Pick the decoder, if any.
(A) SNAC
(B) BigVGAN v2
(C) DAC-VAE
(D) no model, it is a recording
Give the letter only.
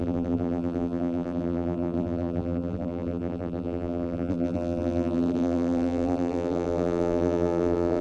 B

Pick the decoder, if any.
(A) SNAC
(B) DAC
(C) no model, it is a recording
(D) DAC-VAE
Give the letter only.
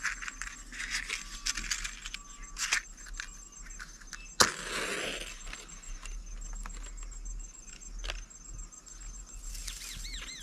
C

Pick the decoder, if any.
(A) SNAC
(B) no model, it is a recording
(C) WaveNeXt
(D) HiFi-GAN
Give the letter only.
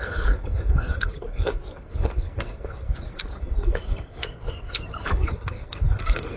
A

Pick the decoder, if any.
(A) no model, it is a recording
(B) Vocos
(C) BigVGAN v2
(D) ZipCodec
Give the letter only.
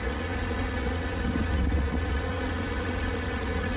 B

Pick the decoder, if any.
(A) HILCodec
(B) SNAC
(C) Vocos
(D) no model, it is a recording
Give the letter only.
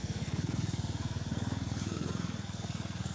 B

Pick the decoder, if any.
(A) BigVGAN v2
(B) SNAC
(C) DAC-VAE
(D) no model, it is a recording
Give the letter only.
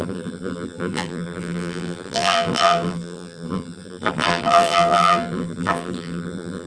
A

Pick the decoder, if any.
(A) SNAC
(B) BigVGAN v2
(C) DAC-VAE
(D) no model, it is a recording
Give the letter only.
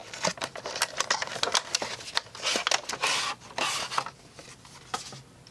D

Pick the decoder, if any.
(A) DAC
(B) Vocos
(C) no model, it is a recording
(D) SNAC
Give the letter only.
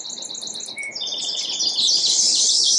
C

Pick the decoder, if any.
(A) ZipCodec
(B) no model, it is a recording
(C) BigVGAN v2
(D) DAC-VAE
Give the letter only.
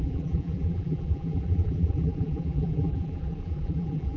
C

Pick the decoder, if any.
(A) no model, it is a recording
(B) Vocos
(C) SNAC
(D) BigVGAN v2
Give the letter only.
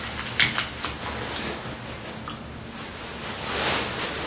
A